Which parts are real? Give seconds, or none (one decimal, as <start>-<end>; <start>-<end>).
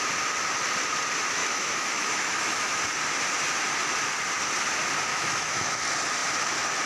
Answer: 0.0-1.4; 2.8-5.1; 5.8-6.9